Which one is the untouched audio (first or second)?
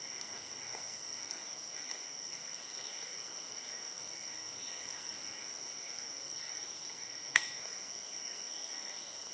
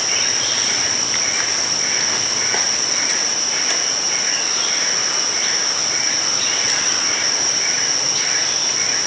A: second